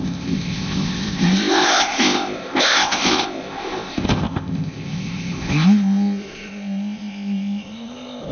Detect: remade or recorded remade